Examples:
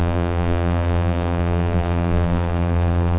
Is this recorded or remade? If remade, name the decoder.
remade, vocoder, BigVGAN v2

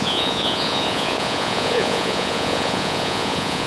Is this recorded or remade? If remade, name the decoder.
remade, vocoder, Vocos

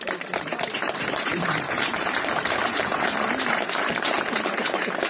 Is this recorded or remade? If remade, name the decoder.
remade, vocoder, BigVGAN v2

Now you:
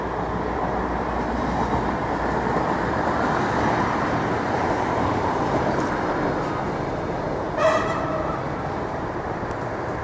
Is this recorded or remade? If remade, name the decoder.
recorded